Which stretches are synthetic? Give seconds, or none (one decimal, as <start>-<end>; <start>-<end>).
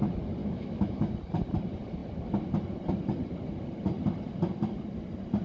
0.4-1.1